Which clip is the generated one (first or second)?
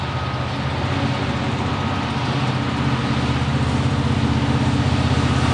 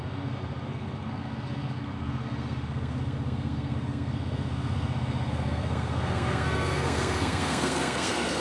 second